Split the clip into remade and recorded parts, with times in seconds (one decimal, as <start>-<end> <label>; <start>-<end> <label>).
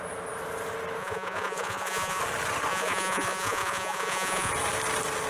0.0-1.0 recorded; 1.0-2.2 remade; 2.2-2.7 recorded; 2.7-4.5 remade; 4.5-5.3 recorded